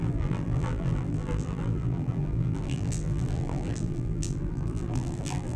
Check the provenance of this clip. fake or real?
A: fake